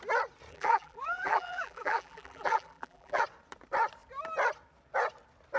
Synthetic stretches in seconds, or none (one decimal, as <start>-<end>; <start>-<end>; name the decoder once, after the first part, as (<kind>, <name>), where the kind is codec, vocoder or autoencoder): 0.5-3.2 (vocoder, BigVGAN v2)